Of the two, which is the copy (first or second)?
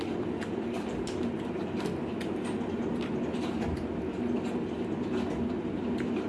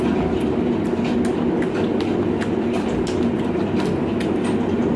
first